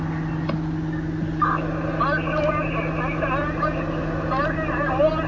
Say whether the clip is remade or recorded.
recorded